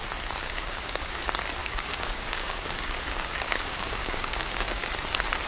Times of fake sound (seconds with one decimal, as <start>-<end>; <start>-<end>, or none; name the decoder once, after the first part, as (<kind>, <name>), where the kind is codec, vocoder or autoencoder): 0.4-1.2 (codec, DAC); 1.6-4.9